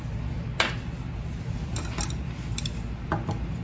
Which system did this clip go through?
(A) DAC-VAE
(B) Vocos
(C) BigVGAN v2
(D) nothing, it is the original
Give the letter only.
D